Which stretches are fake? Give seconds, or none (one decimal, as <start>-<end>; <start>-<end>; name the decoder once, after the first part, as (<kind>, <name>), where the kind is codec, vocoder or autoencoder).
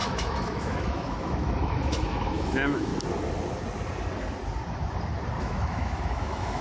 0.0-2.9 (autoencoder, DAC-VAE); 5.4-6.6